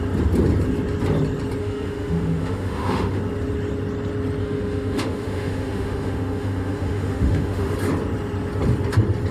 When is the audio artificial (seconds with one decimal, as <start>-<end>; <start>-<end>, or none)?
1.6-3.2; 4.4-7.7

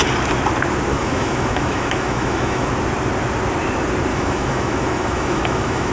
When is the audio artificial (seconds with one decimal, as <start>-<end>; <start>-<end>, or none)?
0.9-2.7; 4.1-5.9

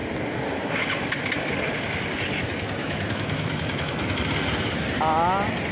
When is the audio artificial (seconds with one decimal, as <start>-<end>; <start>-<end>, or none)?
2.8-4.1

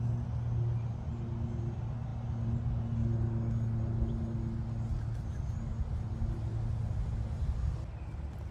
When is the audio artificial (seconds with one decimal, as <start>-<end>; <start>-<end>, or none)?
none

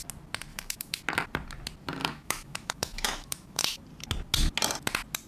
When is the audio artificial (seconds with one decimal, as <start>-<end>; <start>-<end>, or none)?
0.5-1.0; 2.0-3.8

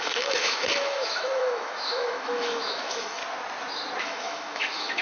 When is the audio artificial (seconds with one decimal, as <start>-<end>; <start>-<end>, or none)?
0.0-3.2; 4.0-5.0

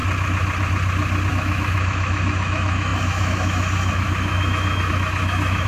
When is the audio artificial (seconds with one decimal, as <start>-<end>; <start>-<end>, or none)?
1.3-5.7